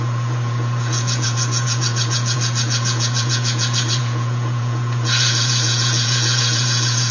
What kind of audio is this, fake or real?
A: fake